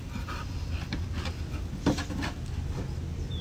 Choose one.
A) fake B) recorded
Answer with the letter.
B